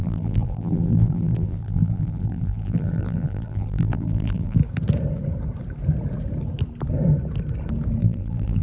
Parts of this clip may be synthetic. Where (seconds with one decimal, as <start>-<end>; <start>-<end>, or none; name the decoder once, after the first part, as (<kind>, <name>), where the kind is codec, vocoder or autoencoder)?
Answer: 0.0-4.6 (vocoder, BigVGAN v2); 8.0-8.6